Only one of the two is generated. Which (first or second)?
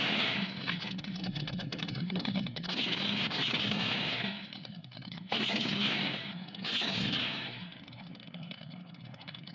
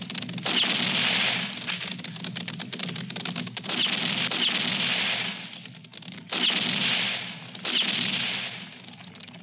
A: first